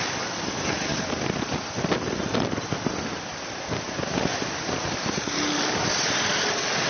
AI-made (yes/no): no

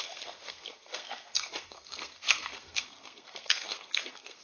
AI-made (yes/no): yes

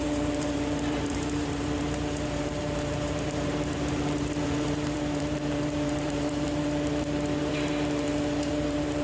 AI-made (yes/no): yes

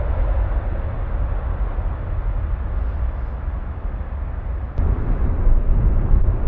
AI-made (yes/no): no